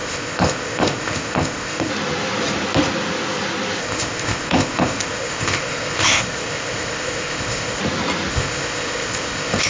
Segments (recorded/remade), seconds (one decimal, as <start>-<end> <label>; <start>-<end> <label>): 0.0-1.9 remade; 1.9-3.8 recorded; 3.8-7.8 remade; 7.8-8.3 recorded; 8.3-9.7 remade